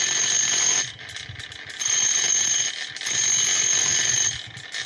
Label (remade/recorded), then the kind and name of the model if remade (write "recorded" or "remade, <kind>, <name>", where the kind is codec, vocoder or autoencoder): recorded